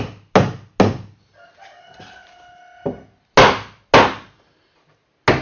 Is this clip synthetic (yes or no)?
no